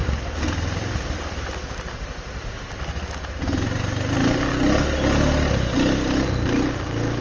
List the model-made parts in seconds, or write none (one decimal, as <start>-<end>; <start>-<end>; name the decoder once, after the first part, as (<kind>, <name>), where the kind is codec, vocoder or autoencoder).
0.0-1.4 (vocoder, BigVGAN v2)